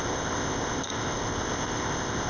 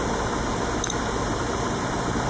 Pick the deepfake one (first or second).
first